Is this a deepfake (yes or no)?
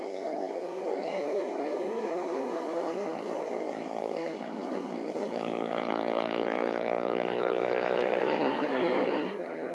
yes